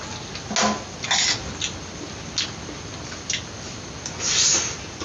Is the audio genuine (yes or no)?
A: yes